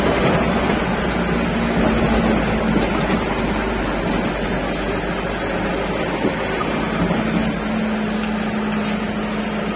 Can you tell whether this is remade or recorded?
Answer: recorded